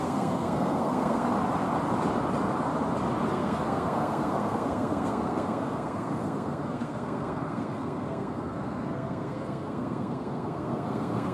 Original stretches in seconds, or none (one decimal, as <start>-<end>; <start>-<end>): 1.3-3.3